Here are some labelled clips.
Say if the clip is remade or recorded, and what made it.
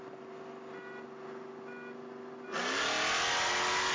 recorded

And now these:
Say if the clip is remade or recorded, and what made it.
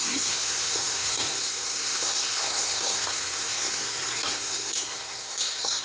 remade, codec, SNAC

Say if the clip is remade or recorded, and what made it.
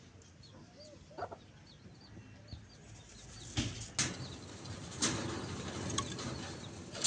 recorded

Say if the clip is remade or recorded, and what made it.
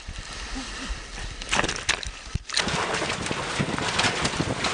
recorded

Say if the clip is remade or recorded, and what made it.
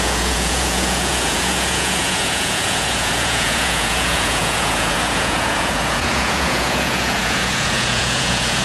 remade, vocoder, Vocos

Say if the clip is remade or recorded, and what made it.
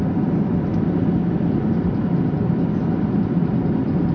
recorded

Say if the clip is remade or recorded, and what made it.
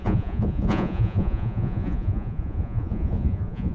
remade, vocoder, Vocos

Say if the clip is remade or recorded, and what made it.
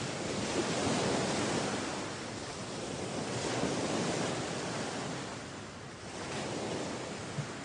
recorded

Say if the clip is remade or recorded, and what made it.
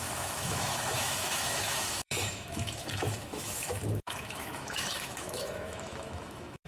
remade, autoencoder, DAC-VAE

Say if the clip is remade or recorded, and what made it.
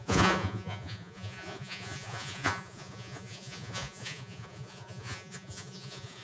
remade, vocoder, Vocos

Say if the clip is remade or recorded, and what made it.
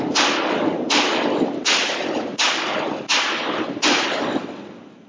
recorded